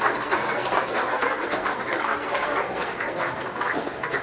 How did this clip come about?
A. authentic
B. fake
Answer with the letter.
B